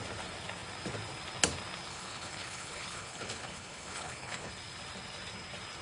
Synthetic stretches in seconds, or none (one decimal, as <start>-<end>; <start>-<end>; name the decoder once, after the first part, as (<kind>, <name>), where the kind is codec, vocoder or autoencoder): 1.9-4.5 (codec, HILCodec)